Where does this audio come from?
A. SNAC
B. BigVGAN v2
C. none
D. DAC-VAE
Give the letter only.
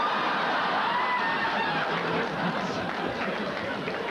C